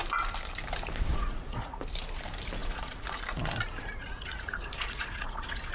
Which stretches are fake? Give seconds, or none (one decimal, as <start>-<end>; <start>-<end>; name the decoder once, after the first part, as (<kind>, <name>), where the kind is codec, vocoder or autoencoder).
1.1-1.8 (vocoder, Vocos); 2.6-3.2; 4.0-5.7